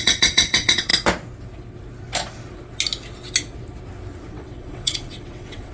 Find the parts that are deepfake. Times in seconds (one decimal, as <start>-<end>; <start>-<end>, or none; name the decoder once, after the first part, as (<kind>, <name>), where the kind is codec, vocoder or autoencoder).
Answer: 0.0-0.9 (vocoder, WaveNeXt); 4.3-5.7